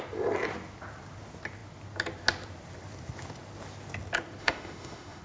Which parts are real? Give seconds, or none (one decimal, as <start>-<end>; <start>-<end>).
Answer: 0.0-4.4